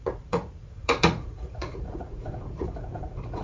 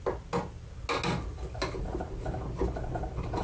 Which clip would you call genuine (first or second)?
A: second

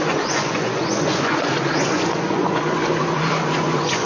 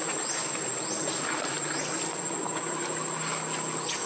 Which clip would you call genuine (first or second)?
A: second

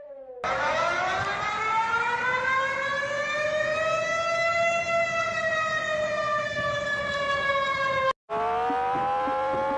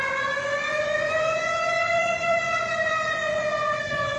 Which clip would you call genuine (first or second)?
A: first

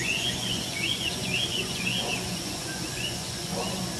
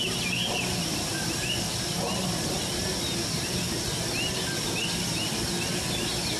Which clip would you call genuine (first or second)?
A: second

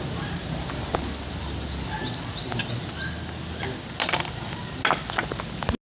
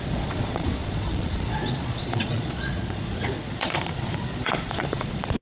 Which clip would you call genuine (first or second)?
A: first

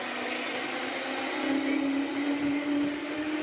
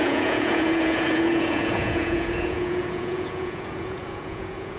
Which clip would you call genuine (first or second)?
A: first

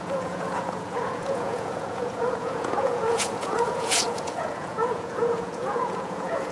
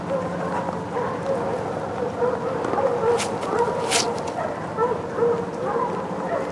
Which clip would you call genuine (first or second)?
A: second